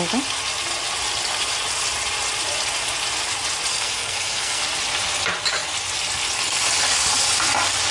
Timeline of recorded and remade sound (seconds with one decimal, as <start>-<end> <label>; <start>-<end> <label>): 0.0-3.7 recorded; 3.7-4.6 remade; 4.6-7.9 recorded